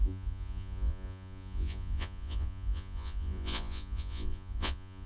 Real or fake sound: fake